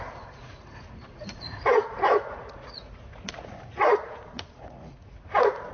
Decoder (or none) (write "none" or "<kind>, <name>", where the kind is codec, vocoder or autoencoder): vocoder, Vocos